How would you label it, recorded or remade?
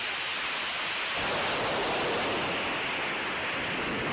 recorded